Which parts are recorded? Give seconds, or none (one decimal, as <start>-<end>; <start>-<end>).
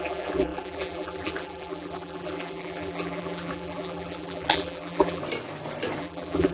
5.2-6.0